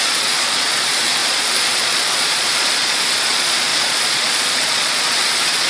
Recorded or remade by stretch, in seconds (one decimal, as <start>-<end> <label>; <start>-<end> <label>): 0.0-5.7 remade